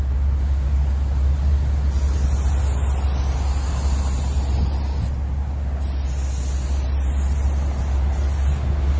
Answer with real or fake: real